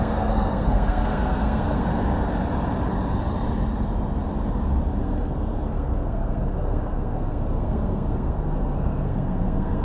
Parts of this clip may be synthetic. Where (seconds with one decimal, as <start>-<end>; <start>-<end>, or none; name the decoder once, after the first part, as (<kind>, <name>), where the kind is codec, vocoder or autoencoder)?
0.0-1.9 (codec, SNAC); 5.0-9.8